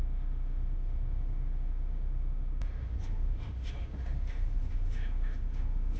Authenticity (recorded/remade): remade